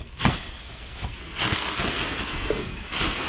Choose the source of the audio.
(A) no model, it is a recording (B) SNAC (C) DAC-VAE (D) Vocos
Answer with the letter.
B